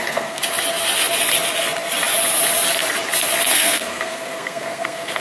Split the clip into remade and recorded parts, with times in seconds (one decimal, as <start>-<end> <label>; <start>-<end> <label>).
0.0-0.4 remade; 0.4-3.5 recorded; 3.5-5.2 remade

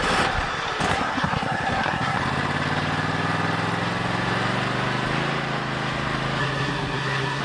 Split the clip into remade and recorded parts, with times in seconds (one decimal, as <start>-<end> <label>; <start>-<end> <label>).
0.0-0.9 recorded; 0.9-2.2 remade; 2.2-6.4 recorded; 6.4-7.4 remade

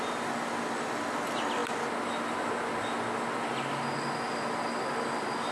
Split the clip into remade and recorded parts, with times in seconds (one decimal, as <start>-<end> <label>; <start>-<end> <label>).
0.0-5.5 recorded

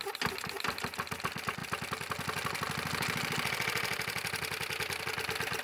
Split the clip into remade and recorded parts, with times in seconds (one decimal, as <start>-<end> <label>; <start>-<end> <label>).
0.0-5.6 recorded

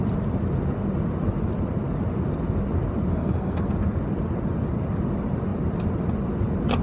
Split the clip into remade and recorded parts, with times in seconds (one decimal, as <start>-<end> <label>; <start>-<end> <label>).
0.0-3.1 recorded; 3.1-3.7 remade; 3.7-6.8 recorded

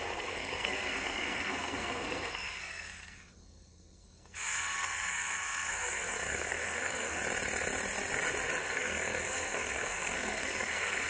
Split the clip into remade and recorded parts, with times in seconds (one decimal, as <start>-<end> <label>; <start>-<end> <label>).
0.0-7.2 remade; 7.2-8.6 recorded; 8.6-11.1 remade

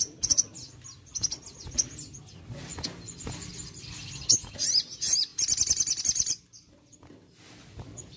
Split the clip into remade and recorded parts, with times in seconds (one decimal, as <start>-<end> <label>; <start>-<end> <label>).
0.0-8.2 recorded

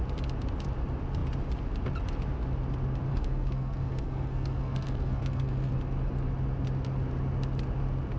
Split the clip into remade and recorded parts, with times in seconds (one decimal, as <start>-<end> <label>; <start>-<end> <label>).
0.0-3.1 recorded; 3.1-5.7 remade; 5.7-8.2 recorded